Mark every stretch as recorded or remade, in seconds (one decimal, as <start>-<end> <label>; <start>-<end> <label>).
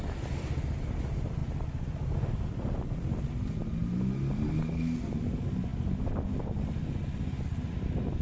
0.0-8.2 recorded